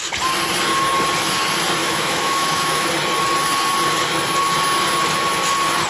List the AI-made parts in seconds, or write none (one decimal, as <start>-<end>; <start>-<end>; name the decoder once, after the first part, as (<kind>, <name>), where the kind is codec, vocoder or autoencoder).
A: 1.8-2.9 (autoencoder, DAC-VAE)